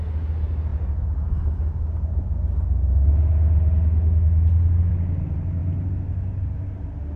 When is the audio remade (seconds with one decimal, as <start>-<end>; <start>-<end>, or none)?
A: none